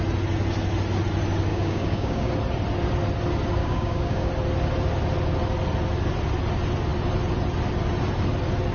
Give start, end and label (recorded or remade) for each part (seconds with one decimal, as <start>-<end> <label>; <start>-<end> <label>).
0.0-1.5 recorded; 1.5-2.3 remade; 2.3-3.6 recorded; 3.6-4.3 remade; 4.3-8.7 recorded